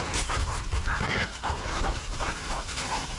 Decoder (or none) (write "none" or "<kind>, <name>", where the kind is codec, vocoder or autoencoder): codec, SNAC